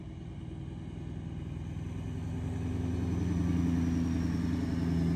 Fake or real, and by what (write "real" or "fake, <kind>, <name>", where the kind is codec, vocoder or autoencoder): real